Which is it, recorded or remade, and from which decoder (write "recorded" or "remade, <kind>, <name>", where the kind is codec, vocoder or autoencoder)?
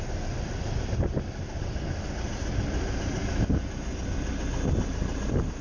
recorded